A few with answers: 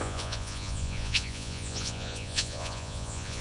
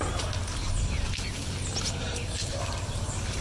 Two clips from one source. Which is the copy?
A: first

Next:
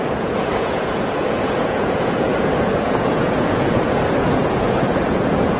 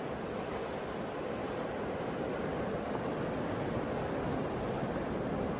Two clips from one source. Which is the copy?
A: first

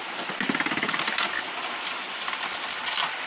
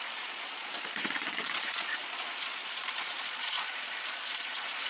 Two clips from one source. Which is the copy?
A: second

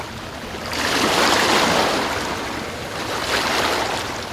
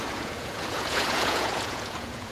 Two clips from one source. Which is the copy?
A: second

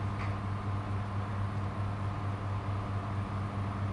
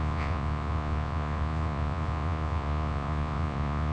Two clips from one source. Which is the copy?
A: second